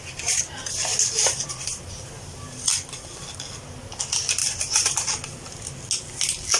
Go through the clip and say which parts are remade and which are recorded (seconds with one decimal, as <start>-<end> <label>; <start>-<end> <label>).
0.0-2.7 recorded; 2.7-3.3 remade; 3.3-6.6 recorded